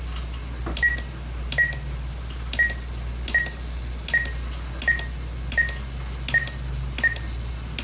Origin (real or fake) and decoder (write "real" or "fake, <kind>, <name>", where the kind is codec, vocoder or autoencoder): real